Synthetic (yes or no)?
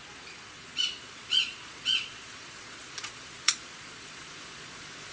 yes